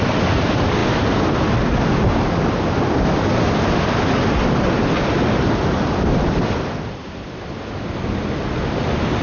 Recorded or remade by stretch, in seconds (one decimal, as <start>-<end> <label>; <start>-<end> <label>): 0.0-9.2 recorded